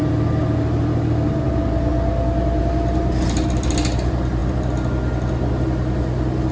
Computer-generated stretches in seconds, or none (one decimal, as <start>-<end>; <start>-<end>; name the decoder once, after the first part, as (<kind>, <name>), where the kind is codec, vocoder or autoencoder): none

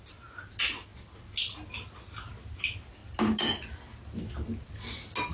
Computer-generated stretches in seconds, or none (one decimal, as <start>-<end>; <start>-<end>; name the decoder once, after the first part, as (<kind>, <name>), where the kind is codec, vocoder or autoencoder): none